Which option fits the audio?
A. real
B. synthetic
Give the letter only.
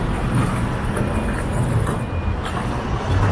A